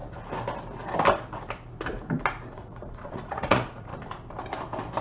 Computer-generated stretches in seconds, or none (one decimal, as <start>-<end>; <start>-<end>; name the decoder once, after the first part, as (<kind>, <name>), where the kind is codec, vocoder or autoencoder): 2.5-3.9 (vocoder, Vocos)